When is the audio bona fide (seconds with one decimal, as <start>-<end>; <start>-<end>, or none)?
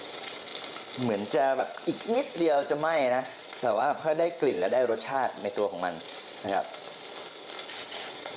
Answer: 0.5-1.6; 5.4-6.0; 6.6-7.7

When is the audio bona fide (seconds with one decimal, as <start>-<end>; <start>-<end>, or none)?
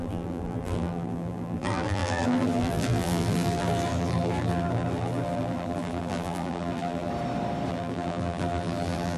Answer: 7.1-7.7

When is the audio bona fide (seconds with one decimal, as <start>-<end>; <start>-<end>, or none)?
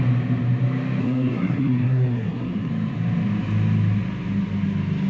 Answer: 0.0-1.0; 2.7-5.1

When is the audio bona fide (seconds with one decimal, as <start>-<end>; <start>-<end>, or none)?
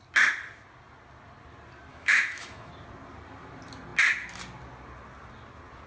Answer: 0.0-1.9; 2.7-5.9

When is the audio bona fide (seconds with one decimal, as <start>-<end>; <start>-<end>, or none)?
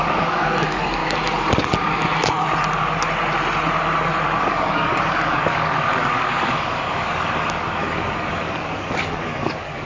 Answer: 1.0-4.4